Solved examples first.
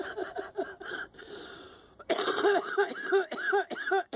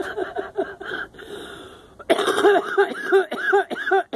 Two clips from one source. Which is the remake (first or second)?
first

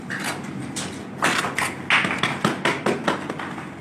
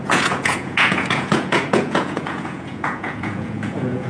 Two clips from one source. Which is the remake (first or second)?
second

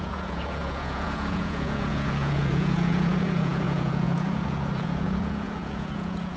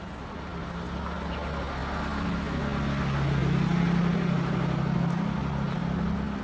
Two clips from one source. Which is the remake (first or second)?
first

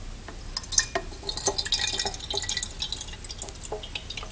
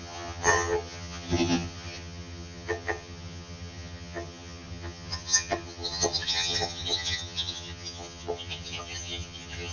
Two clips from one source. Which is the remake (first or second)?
second